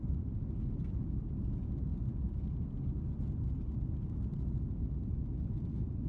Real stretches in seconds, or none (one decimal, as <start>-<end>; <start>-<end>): 0.0-6.1

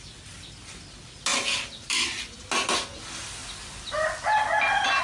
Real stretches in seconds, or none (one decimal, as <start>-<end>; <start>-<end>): 0.0-5.0

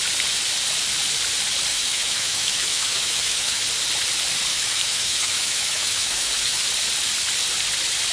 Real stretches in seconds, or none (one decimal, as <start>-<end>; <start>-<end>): 0.0-1.7; 3.6-4.5; 6.6-8.1